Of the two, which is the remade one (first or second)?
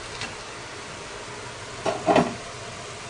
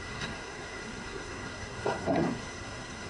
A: second